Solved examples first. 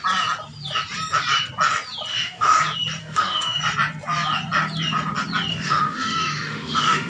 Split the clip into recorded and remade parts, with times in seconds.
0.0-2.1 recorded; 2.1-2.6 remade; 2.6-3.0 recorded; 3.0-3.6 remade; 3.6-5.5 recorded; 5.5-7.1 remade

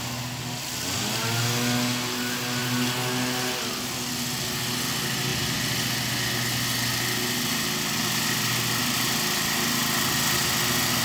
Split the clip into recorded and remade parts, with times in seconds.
0.0-11.0 recorded

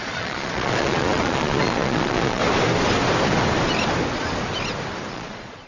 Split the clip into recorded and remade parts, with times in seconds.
0.0-2.4 remade; 2.4-5.1 recorded; 5.1-5.7 remade

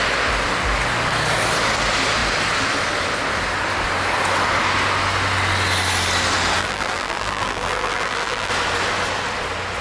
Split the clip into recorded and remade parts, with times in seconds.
0.0-6.6 recorded; 6.6-8.5 remade; 8.5-9.8 recorded

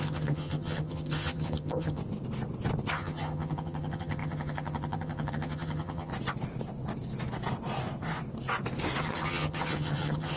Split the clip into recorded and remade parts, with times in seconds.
0.0-2.0 remade; 2.0-2.9 recorded; 2.9-6.1 remade; 6.1-9.0 recorded; 9.0-10.4 remade